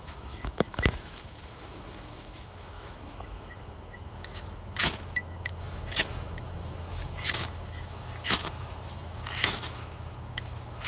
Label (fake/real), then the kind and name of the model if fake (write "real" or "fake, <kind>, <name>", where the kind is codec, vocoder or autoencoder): fake, autoencoder, DAC-VAE